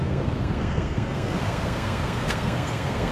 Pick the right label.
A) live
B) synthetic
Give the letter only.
B